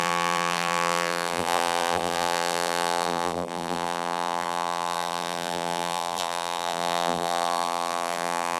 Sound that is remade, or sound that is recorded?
remade